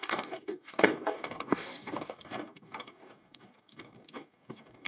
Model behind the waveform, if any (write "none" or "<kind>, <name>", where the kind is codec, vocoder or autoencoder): codec, DAC